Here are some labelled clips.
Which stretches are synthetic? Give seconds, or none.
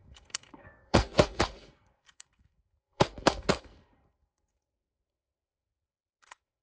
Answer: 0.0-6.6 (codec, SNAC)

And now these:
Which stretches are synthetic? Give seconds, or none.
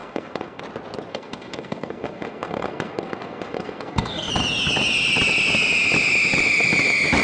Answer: 0.0-0.6 (codec, SNAC); 1.1-4.3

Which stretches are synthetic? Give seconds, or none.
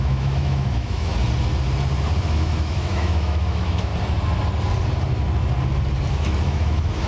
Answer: 0.0-1.1 (autoencoder, DAC-VAE); 2.2-3.9; 6.1-7.1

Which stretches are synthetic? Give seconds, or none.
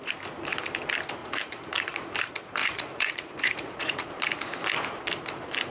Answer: 1.2-2.1 (vocoder, Vocos); 2.6-4.1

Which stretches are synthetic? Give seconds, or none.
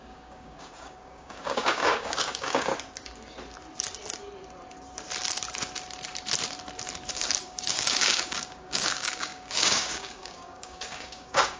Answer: 0.0-2.7 (codec, DAC); 7.1-11.6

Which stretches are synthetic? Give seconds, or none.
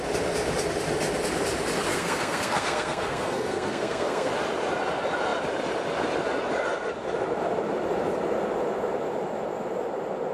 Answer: 1.9-4.3 (codec, SNAC)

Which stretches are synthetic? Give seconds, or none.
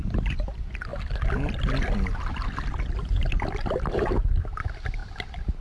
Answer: none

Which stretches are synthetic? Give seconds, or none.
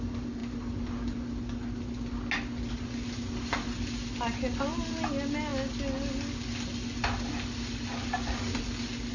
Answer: none